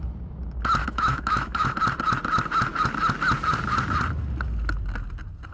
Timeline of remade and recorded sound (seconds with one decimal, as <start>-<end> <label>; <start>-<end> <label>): 0.0-0.8 recorded; 0.8-1.8 remade; 1.8-5.5 recorded